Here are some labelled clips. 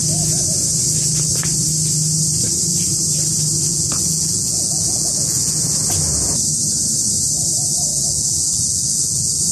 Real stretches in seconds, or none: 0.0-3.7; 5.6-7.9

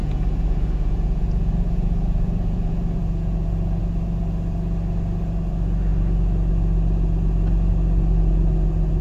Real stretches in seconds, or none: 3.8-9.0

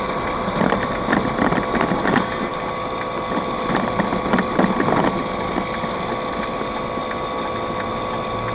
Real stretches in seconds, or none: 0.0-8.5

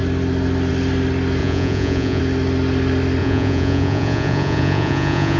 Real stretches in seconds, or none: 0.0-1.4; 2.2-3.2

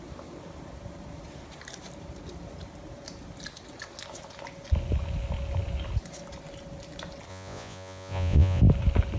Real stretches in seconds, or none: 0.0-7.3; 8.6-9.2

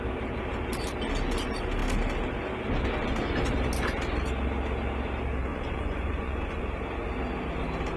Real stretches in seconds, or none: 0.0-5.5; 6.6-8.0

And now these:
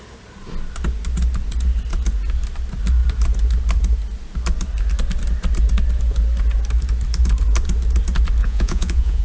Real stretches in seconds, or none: 0.0-8.4